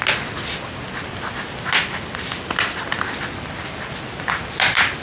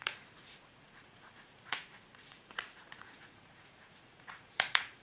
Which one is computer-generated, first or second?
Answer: second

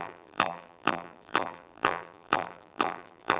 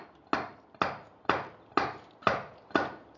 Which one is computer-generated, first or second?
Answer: first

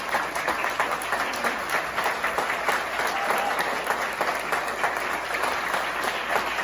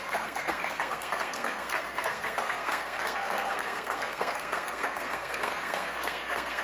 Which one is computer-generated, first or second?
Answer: second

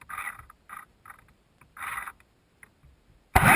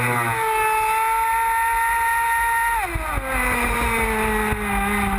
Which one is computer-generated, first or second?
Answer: first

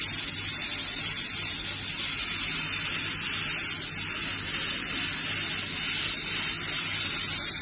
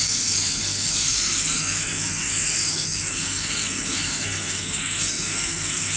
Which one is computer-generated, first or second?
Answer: second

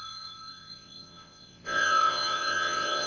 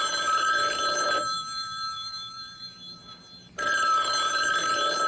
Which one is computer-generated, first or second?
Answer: first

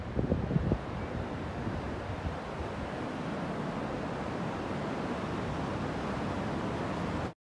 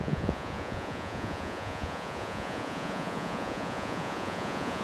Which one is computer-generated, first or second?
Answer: second